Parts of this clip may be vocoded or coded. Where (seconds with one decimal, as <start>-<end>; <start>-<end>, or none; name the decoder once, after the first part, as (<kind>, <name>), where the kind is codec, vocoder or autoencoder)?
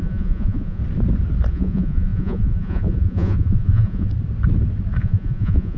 0.0-0.8 (vocoder, Vocos); 1.5-4.1; 5.0-5.8